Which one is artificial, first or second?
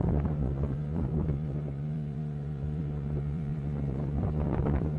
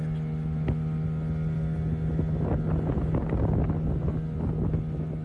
first